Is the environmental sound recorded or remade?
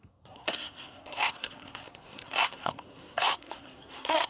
remade